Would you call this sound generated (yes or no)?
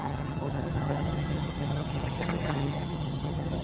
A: yes